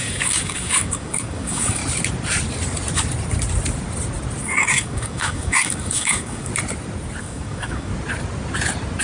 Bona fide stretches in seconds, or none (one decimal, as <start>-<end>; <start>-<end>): 1.8-4.4; 6.5-7.2; 7.9-9.0